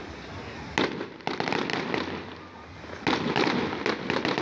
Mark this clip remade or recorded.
recorded